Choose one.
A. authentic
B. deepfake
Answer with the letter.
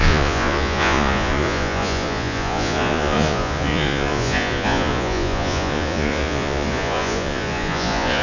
B